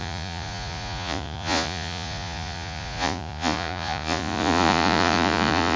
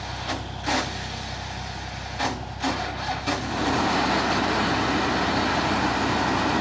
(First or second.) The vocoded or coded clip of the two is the first